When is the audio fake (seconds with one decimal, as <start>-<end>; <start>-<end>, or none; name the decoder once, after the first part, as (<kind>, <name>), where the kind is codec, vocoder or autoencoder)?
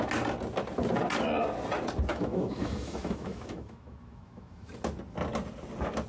2.1-4.7 (autoencoder, DAC-VAE)